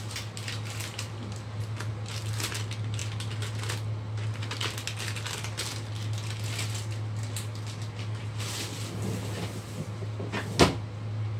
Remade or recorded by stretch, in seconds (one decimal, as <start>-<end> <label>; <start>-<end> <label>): 0.0-11.4 recorded